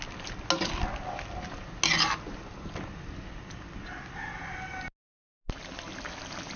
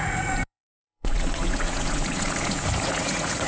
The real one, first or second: first